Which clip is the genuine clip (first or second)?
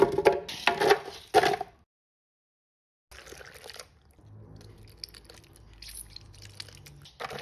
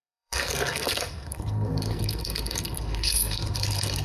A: first